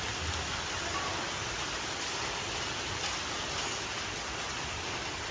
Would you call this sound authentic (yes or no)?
no